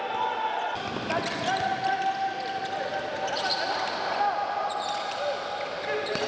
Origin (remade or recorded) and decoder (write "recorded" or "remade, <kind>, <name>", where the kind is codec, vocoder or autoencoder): recorded